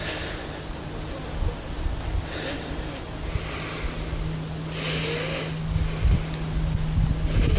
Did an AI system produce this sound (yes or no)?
no